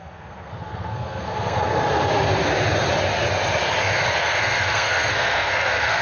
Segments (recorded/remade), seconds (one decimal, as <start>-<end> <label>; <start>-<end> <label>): 0.0-1.7 remade; 1.7-4.1 recorded; 4.1-6.0 remade